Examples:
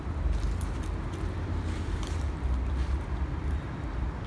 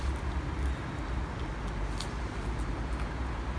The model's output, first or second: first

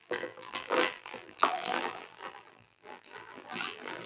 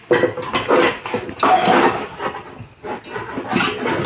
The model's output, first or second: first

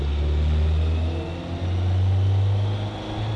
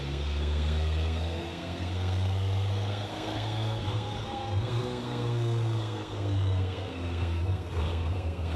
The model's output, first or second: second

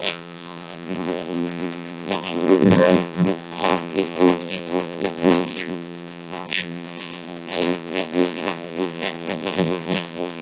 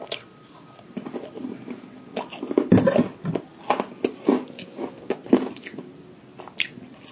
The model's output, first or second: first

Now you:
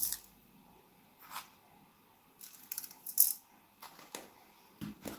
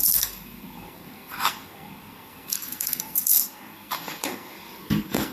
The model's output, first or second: second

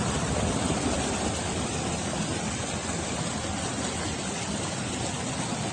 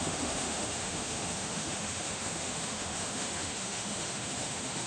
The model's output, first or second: second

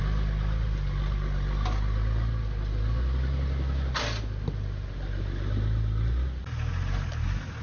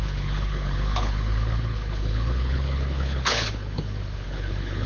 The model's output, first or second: second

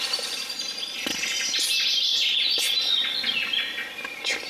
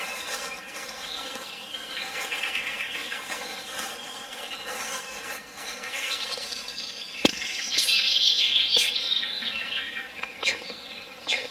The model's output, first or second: second